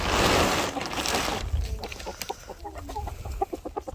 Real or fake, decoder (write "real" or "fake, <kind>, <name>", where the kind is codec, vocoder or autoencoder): real